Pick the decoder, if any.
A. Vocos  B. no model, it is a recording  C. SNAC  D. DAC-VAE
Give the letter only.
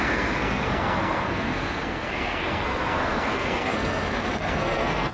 C